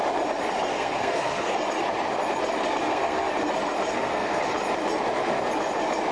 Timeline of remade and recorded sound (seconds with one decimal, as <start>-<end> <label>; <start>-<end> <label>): 0.0-0.7 recorded; 0.7-1.5 remade; 1.5-2.8 recorded; 2.8-3.3 remade; 3.3-3.9 recorded; 3.9-4.4 remade; 4.4-6.1 recorded